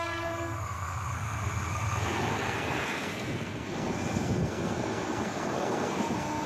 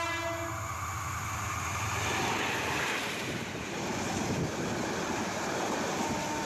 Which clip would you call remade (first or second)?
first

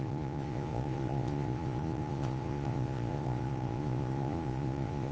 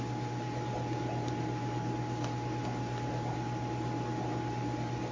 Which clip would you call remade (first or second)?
first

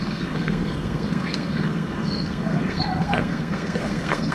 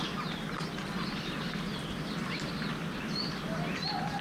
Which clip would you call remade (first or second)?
first